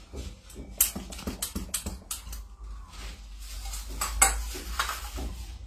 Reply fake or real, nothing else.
real